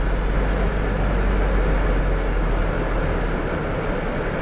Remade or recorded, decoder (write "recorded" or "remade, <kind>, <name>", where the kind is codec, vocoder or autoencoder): recorded